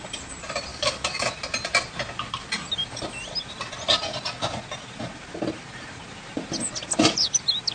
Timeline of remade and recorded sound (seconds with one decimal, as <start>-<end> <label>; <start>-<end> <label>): 0.0-0.7 recorded; 0.7-1.3 remade; 1.3-7.7 recorded